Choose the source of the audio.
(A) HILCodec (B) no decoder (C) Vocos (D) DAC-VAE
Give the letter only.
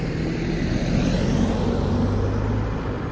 B